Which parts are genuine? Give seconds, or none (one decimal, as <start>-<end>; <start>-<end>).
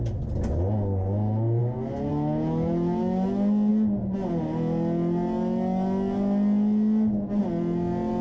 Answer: 0.0-8.2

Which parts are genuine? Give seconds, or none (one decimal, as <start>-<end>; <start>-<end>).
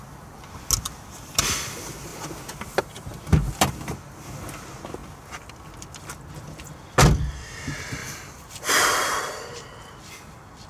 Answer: 0.0-8.0; 9.2-10.7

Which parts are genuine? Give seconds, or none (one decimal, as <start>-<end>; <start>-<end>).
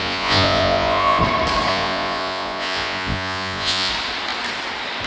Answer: 1.2-1.7; 3.9-5.1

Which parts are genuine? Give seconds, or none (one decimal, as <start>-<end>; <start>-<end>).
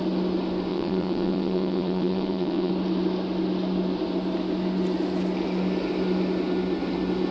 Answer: 0.0-0.7; 2.7-7.3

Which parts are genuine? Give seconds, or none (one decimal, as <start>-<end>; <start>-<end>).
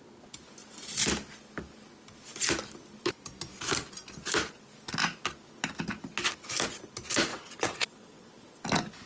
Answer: 0.0-7.3; 8.6-9.1